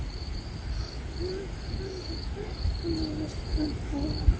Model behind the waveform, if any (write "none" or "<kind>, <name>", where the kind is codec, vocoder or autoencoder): none